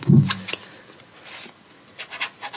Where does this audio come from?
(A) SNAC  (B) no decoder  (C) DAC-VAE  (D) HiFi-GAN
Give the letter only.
B